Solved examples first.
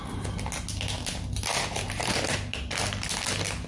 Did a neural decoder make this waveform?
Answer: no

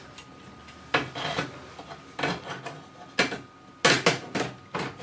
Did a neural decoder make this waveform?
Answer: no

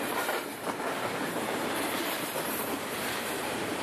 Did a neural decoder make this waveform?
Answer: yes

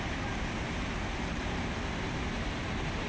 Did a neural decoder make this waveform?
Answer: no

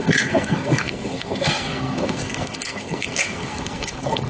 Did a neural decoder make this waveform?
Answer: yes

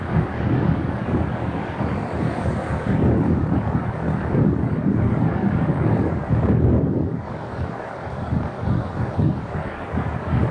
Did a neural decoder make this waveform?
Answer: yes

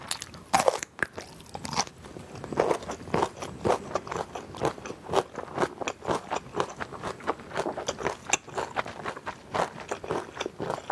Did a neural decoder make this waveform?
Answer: no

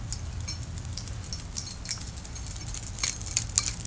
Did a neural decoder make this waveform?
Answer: no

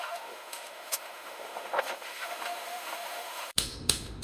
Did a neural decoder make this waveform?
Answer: yes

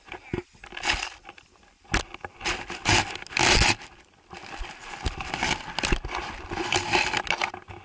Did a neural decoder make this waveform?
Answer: no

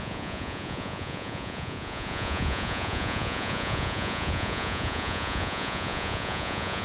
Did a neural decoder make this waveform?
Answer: yes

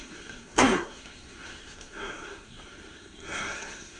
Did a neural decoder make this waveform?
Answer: yes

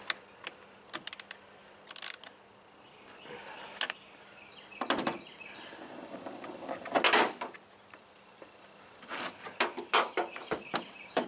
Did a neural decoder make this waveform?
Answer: no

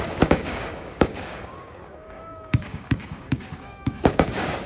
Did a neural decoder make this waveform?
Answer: yes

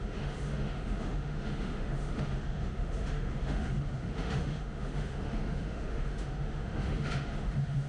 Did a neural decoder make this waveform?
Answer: yes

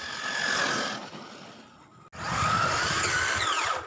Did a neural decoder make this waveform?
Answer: no